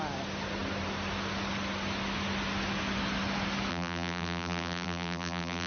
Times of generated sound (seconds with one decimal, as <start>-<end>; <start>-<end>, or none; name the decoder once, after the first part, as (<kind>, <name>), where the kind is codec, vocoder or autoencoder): 3.7-5.7 (vocoder, BigVGAN v2)

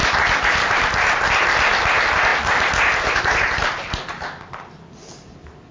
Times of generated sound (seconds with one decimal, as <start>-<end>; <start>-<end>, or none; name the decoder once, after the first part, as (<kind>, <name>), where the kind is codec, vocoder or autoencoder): 0.0-1.7 (vocoder, BigVGAN v2); 2.3-3.2

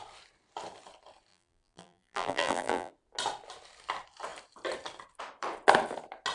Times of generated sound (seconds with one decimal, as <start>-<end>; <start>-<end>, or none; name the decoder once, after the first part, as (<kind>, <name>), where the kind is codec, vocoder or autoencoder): 1.3-2.9 (vocoder, BigVGAN v2)

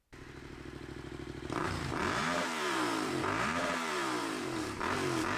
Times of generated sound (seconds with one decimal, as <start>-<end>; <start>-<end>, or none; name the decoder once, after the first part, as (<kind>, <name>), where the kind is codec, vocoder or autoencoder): 1.6-4.8 (vocoder, BigVGAN v2)